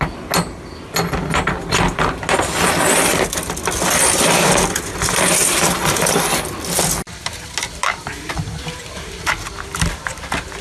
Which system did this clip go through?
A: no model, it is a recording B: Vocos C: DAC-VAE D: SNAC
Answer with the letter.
A